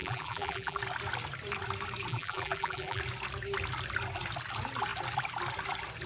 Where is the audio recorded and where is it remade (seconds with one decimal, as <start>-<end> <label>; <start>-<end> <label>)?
0.0-0.8 remade; 0.8-2.1 recorded; 2.1-3.0 remade; 3.0-6.1 recorded